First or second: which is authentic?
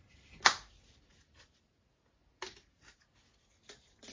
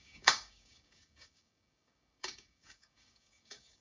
first